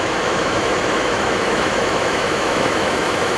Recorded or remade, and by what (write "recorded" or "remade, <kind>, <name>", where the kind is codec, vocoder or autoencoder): remade, autoencoder, DAC-VAE